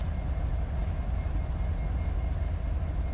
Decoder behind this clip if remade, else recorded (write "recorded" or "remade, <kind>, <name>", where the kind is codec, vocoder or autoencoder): recorded